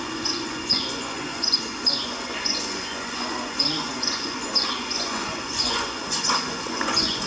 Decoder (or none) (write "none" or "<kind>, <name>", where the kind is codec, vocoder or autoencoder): vocoder, Vocos